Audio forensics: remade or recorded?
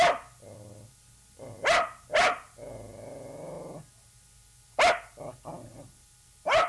recorded